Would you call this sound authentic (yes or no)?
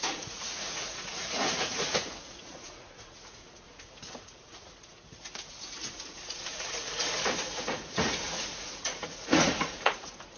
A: no